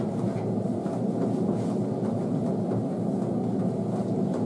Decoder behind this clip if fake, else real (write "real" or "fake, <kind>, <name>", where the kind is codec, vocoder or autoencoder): real